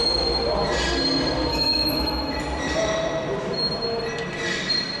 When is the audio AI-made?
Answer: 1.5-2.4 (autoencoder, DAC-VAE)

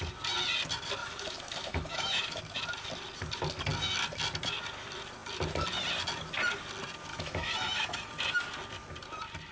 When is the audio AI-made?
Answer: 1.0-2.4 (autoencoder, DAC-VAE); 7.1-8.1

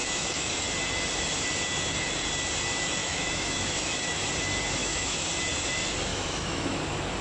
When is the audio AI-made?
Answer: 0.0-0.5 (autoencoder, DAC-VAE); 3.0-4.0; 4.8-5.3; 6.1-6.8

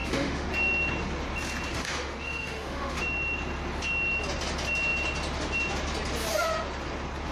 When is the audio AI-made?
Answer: 0.0-0.5 (autoencoder, DAC-VAE); 1.7-3.0

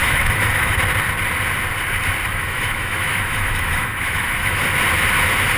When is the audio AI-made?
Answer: 0.0-0.8 (autoencoder, DAC-VAE); 2.3-4.6

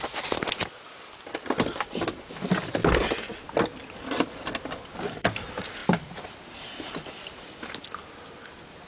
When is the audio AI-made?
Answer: none